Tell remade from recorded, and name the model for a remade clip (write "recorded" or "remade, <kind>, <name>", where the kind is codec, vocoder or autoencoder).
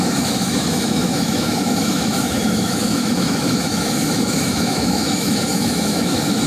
remade, autoencoder, DAC-VAE